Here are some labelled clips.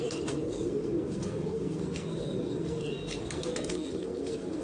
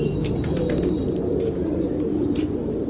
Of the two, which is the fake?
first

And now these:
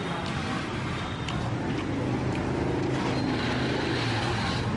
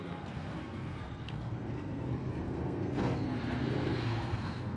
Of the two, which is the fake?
second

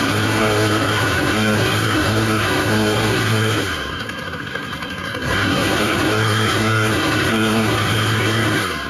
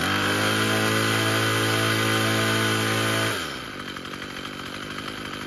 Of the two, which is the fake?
first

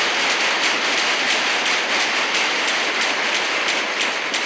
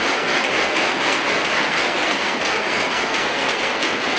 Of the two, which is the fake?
second